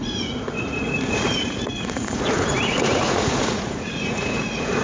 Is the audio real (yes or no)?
no